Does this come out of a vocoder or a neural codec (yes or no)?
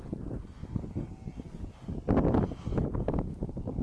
no